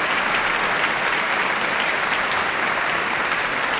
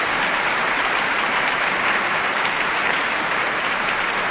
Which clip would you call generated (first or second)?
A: second